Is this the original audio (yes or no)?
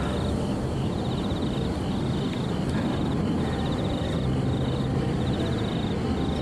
yes